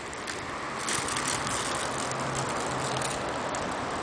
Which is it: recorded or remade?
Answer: recorded